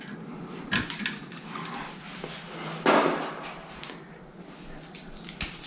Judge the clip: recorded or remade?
recorded